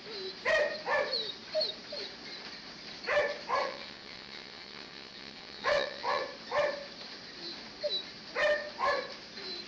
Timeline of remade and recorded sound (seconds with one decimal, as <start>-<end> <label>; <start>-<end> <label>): 0.0-3.6 recorded; 3.6-6.2 remade; 6.2-9.7 recorded